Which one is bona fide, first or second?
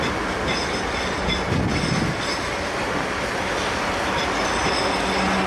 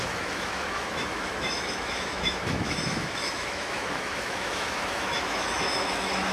first